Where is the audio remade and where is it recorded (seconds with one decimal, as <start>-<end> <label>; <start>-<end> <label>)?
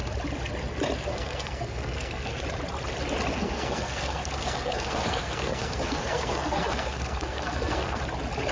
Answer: 0.0-1.1 recorded; 1.1-2.4 remade; 2.4-3.3 recorded; 3.3-8.0 remade; 8.0-8.5 recorded